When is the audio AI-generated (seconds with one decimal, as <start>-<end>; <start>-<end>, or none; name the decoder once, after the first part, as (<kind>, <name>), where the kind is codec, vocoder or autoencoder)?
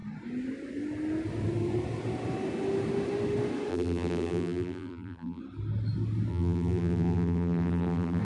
3.7-5.4 (vocoder, BigVGAN v2); 6.3-8.2